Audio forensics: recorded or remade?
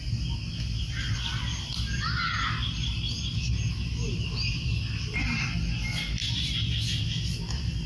recorded